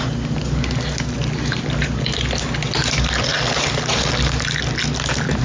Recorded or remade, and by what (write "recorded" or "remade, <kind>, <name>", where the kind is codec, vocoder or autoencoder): recorded